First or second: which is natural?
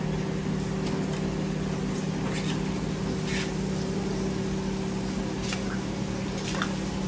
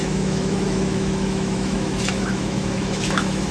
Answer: first